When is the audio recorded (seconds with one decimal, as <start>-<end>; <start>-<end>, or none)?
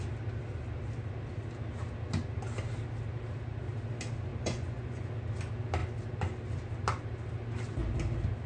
0.0-4.3; 5.1-8.5